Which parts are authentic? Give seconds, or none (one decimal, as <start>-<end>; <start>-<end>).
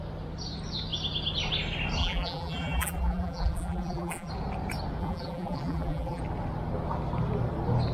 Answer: 0.0-2.0; 4.3-5.0; 6.2-7.9